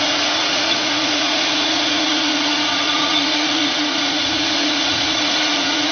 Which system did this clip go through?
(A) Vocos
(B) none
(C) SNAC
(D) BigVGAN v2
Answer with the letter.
A